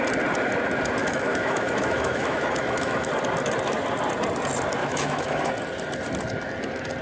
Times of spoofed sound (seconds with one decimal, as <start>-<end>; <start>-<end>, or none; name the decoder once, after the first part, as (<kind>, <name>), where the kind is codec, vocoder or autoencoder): 1.0-3.1 (autoencoder, DAC-VAE); 4.8-5.5